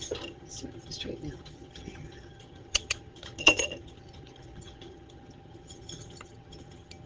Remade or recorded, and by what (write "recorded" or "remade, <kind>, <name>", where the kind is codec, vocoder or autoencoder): remade, vocoder, HiFi-GAN